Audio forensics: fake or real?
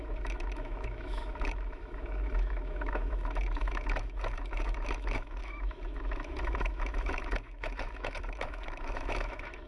fake